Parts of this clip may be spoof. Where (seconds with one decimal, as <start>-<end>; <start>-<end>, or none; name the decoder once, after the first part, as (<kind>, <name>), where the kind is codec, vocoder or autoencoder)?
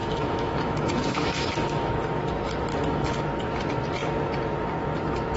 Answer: 0.0-1.9 (autoencoder, DAC-VAE); 2.7-3.2